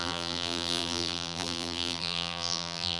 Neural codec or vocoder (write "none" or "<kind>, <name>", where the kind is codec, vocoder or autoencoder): vocoder, BigVGAN v2